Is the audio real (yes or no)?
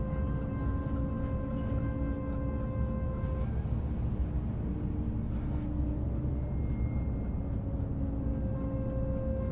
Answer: yes